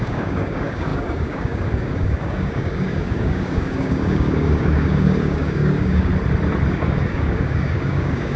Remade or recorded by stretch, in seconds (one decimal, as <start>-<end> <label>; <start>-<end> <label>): 0.0-6.1 remade; 6.1-6.7 recorded; 6.7-8.4 remade